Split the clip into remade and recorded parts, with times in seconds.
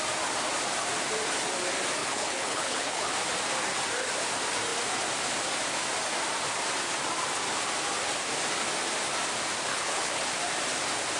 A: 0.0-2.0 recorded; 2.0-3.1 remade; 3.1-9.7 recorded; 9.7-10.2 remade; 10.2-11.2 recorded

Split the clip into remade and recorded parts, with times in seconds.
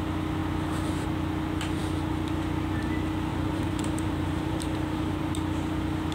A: 0.0-3.3 recorded; 3.3-5.2 remade; 5.2-6.1 recorded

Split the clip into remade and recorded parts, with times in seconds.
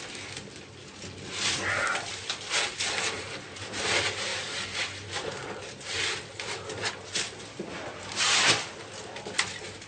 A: 0.0-9.9 recorded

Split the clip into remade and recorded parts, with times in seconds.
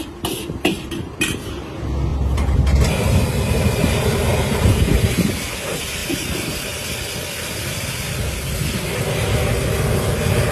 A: 0.0-2.1 recorded; 2.1-3.8 remade; 3.8-4.3 recorded; 4.3-5.1 remade; 5.1-6.0 recorded; 6.0-8.2 remade; 8.2-10.5 recorded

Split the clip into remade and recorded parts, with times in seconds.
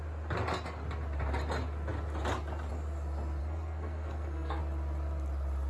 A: 0.0-3.4 recorded; 3.4-4.6 remade; 4.6-5.7 recorded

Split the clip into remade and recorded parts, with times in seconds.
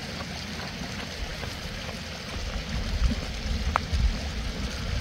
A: 0.0-5.0 recorded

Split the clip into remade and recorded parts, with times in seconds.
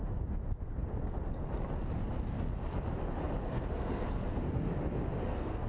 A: 0.0-3.4 recorded; 3.4-4.7 remade; 4.7-5.2 recorded; 5.2-5.7 remade